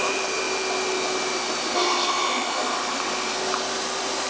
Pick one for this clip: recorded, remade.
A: recorded